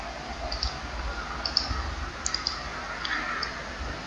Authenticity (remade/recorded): recorded